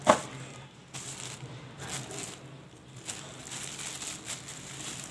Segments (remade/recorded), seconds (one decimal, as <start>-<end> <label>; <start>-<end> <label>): 0.0-5.1 recorded